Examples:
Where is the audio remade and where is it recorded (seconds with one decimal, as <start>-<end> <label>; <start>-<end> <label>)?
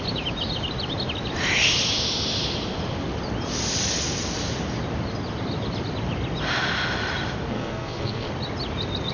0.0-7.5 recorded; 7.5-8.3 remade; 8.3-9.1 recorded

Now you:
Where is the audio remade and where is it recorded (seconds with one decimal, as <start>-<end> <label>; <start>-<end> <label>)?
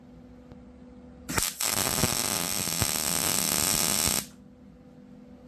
0.0-5.5 recorded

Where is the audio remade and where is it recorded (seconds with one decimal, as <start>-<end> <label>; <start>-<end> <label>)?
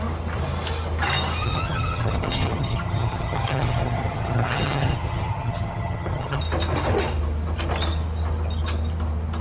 0.0-1.4 recorded; 1.4-6.4 remade; 6.4-9.4 recorded